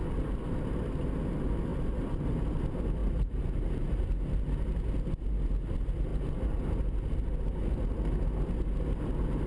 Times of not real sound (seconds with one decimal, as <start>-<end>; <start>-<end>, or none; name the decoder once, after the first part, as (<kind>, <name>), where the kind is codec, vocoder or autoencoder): 1.7-2.6 (vocoder, BigVGAN v2); 3.0-3.9

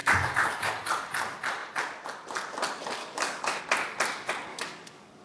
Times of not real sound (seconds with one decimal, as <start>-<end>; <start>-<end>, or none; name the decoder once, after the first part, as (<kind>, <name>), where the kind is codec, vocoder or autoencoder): 0.0-0.7 (codec, DAC); 3.0-3.6; 4.5-5.2

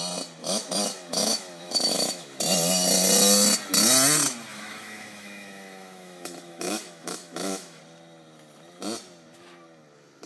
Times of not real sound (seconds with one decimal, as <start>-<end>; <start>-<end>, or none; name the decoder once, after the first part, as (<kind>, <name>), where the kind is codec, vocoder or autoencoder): 0.4-2.4 (autoencoder, DAC-VAE); 4.5-7.8

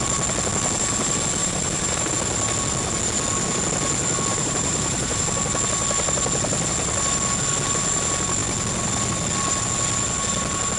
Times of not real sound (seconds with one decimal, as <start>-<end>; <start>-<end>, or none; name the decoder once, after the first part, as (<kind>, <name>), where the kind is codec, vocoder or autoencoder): 1.4-2.1 (vocoder, BigVGAN v2); 4.3-5.2